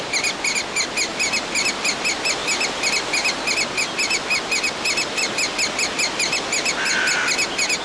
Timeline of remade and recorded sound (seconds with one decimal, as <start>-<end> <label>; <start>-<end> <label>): 0.0-7.8 recorded